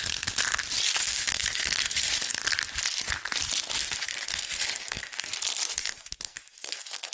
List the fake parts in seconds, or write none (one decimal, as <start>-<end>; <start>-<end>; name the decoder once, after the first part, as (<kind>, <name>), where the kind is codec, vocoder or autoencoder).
1.0-2.1 (codec, SNAC); 3.8-5.3; 5.7-7.1